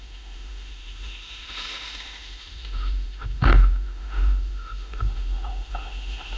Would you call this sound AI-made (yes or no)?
yes